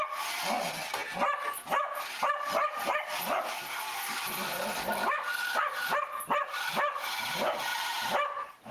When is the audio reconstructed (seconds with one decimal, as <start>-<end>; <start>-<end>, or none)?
7.7-8.7

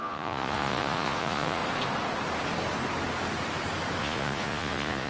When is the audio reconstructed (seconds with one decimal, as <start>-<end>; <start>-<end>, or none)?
0.0-1.6; 4.0-5.1

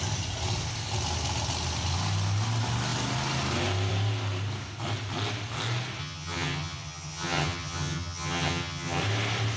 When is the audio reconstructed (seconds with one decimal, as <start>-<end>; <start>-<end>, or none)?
6.0-9.0

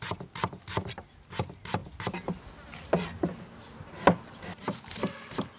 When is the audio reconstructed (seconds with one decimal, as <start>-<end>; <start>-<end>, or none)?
none